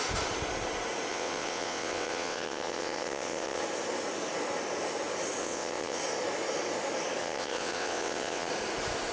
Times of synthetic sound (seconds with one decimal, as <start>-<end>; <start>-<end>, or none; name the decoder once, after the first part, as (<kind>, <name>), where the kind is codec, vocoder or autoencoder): 1.1-3.6 (vocoder, WaveNeXt); 5.4-6.0; 7.2-8.5